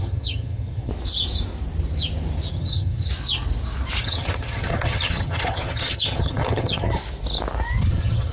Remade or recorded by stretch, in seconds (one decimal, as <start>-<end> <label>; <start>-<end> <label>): 0.0-0.9 remade; 0.9-2.5 recorded; 2.5-3.1 remade; 3.1-4.0 recorded; 4.0-7.0 remade; 7.0-7.9 recorded; 7.9-8.3 remade